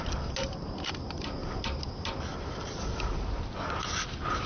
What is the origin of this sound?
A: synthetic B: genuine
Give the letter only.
B